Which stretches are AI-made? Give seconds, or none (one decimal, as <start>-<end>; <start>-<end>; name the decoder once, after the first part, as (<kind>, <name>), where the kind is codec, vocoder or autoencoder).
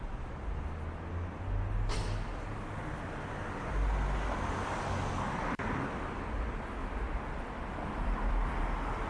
6.8-8.6 (vocoder, BigVGAN v2)